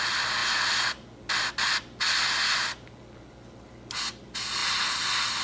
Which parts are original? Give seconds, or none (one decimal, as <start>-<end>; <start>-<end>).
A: 0.0-5.4